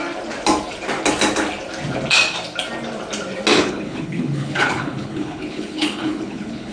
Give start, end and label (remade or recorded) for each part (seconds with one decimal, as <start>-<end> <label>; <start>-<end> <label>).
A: 0.0-3.5 recorded; 3.5-6.7 remade